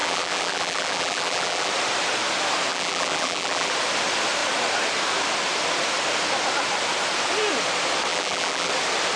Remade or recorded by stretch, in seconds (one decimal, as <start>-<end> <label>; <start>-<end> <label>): 0.0-1.7 remade; 1.7-2.7 recorded; 2.7-3.7 remade; 3.7-8.1 recorded; 8.1-8.7 remade; 8.7-9.2 recorded